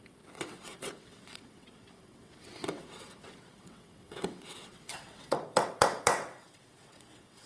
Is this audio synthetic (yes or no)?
yes